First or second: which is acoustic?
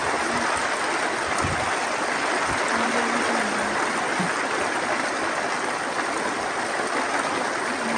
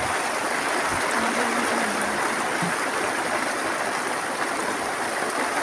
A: first